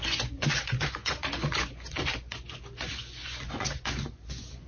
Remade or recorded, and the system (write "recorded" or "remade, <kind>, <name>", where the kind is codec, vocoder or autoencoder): remade, vocoder, Vocos